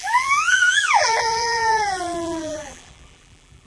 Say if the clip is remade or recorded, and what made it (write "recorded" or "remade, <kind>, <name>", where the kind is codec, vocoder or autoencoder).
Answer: remade, vocoder, BigVGAN v2